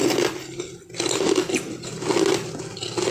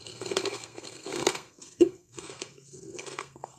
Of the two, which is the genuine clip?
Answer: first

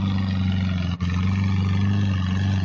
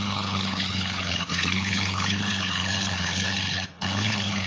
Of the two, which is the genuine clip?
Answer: first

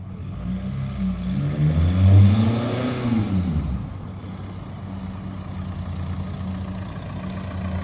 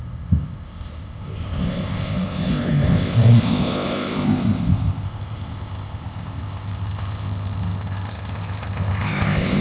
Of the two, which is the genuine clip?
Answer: first